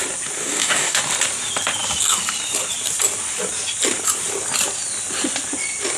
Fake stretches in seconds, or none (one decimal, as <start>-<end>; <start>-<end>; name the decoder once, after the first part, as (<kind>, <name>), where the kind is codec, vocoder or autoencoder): 0.4-1.0 (codec, DAC)